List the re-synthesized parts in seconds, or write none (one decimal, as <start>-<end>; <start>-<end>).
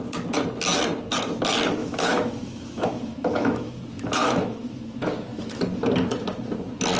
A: 1.8-5.6